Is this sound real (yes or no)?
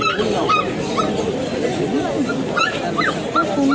yes